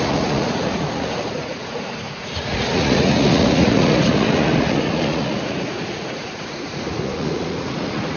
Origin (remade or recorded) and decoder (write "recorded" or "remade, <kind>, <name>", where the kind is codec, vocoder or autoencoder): remade, vocoder, Vocos